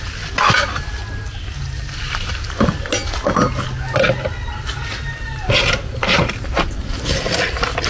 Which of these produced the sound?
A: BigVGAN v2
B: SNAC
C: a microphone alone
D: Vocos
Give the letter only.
C